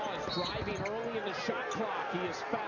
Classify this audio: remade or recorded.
recorded